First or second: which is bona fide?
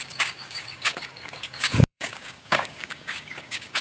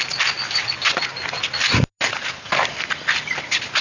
second